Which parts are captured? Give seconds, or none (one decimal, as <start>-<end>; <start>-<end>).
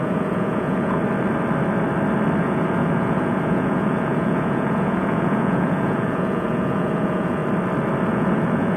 1.0-2.4; 7.4-8.1